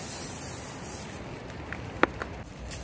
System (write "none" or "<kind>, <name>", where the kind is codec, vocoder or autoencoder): none